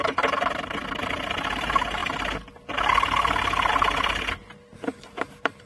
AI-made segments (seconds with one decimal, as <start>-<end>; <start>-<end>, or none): 0.0-0.8; 1.6-2.0; 3.7-5.7